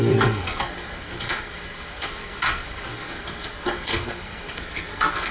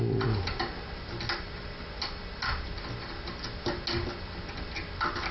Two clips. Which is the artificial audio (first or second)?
first